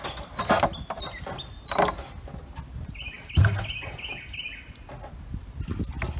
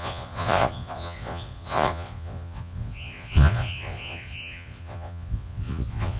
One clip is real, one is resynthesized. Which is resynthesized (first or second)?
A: second